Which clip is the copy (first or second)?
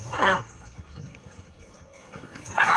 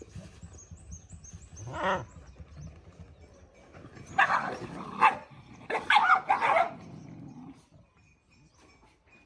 first